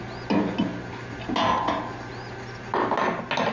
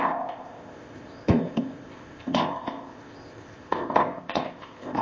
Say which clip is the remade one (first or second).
second